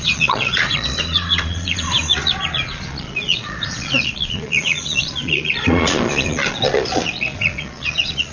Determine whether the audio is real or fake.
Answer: fake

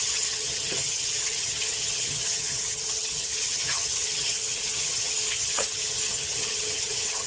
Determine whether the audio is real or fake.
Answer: fake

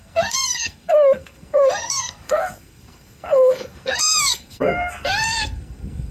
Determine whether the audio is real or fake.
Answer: fake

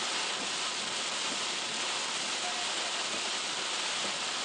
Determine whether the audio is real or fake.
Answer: real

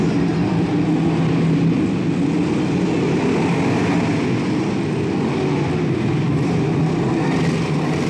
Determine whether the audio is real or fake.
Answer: real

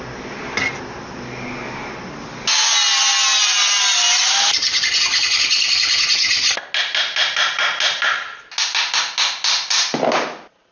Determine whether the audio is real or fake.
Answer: real